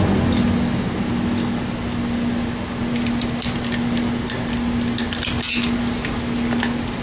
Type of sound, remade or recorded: recorded